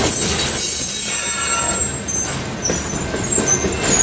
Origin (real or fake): real